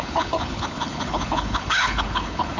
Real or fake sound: fake